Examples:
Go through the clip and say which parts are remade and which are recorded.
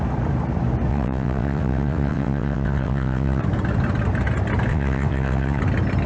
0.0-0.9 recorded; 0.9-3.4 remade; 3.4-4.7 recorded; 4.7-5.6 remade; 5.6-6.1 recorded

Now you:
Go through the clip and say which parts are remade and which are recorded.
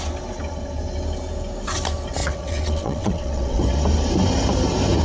0.0-2.2 recorded; 2.2-3.6 remade; 3.6-5.0 recorded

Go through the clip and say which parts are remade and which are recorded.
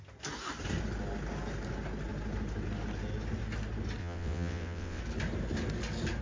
0.0-4.0 recorded; 4.0-5.0 remade; 5.0-6.2 recorded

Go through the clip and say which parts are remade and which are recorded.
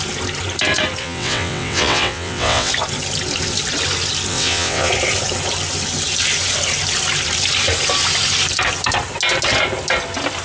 0.0-1.0 recorded; 1.0-2.7 remade; 2.7-4.3 recorded; 4.3-4.9 remade; 4.9-10.4 recorded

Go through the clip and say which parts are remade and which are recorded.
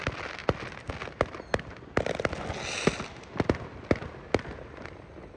0.0-5.4 recorded